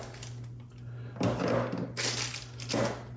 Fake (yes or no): no